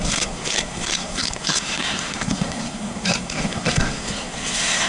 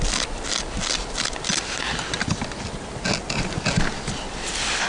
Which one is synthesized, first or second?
first